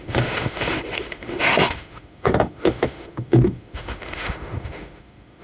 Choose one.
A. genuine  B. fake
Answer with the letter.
B